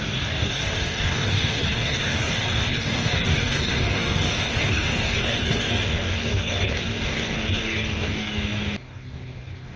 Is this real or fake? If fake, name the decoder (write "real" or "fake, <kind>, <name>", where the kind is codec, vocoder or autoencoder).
fake, codec, DAC